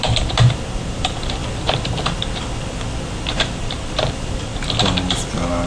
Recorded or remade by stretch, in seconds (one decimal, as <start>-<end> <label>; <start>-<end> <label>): 0.0-1.4 remade; 1.4-3.4 recorded; 3.4-4.5 remade; 4.5-5.7 recorded